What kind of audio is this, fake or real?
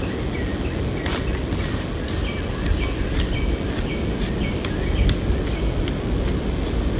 real